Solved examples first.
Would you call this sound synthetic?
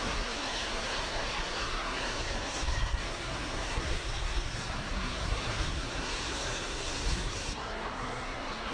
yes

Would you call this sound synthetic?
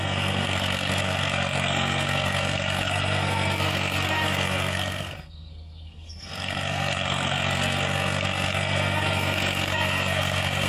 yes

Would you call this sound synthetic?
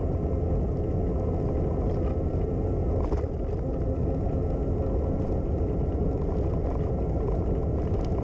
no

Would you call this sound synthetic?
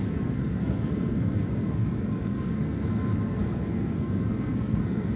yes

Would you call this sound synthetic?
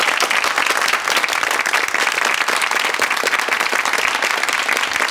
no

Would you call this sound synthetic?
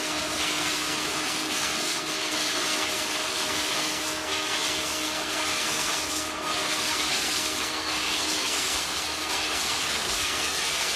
yes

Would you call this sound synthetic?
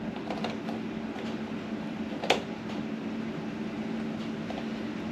no